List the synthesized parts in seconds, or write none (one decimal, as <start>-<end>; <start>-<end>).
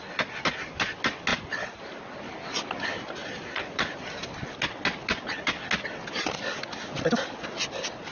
1.3-1.8; 3.2-4.0